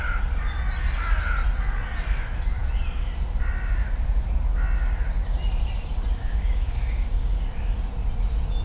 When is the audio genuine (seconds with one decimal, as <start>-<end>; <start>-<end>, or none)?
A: 0.0-6.2; 7.4-8.6